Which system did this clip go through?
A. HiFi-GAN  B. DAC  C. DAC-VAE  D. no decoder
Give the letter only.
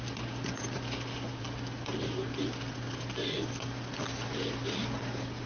D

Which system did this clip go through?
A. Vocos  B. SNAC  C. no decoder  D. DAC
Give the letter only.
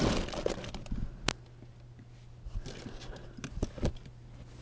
C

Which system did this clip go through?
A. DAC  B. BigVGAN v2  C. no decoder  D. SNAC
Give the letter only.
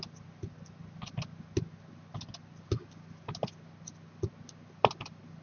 C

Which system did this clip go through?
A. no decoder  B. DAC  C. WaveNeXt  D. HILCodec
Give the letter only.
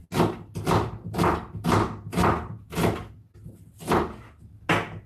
A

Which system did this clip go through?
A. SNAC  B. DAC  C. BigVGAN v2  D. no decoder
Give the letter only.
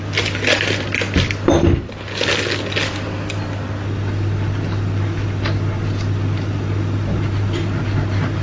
D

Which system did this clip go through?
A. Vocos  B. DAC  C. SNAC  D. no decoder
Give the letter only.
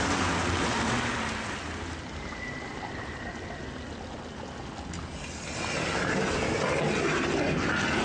D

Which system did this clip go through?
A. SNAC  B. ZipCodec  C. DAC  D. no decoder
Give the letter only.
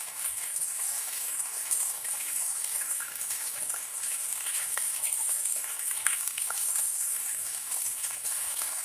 C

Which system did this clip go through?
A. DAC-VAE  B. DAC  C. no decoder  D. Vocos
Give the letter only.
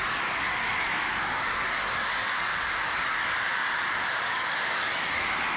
B